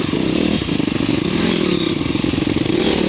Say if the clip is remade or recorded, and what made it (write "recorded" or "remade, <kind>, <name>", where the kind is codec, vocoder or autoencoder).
recorded